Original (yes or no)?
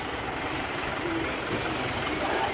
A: yes